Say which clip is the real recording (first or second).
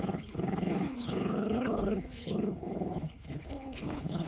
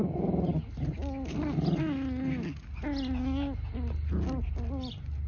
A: second